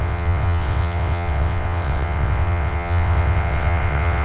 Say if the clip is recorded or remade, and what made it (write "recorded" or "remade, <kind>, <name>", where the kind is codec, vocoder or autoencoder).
remade, vocoder, WaveNeXt